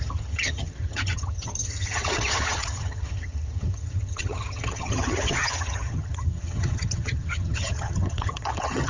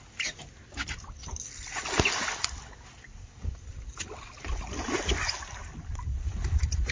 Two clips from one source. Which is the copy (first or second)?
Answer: first